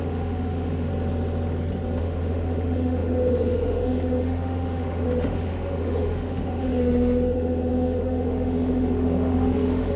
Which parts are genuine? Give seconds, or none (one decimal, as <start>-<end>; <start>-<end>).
0.9-2.0